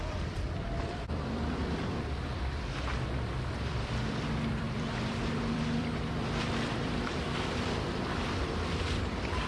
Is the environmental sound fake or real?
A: fake